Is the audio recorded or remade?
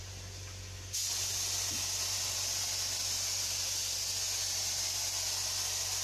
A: recorded